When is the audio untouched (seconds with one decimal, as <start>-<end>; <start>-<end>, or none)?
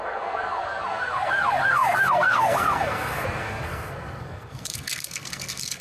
none